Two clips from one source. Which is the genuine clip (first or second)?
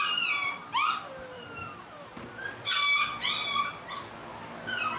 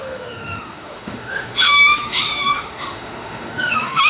first